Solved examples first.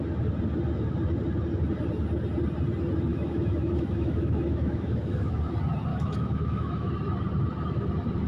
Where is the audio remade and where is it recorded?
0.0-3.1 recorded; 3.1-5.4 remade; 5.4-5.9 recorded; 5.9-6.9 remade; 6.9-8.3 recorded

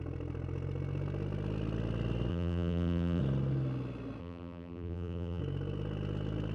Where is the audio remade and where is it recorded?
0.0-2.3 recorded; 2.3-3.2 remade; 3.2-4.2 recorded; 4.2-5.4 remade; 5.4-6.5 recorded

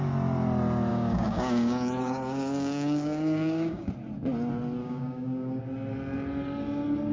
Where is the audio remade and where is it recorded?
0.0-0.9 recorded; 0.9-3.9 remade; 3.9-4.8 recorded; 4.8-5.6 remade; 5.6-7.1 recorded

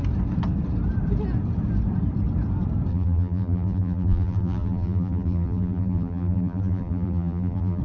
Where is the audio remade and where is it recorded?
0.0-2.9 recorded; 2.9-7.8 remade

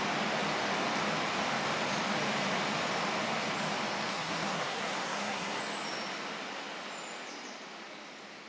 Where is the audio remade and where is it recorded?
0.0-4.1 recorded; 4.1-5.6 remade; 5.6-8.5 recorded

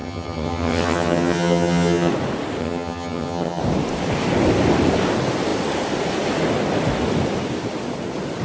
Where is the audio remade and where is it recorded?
0.0-2.1 remade; 2.1-2.6 recorded; 2.6-3.6 remade; 3.6-8.4 recorded